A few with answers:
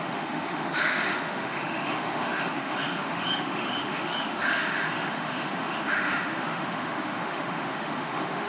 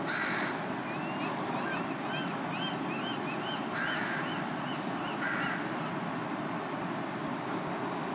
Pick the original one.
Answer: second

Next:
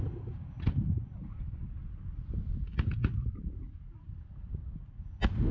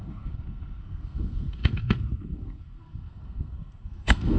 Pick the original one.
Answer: first